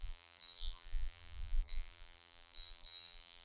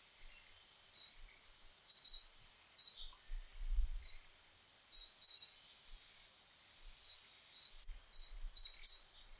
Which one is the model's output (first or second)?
first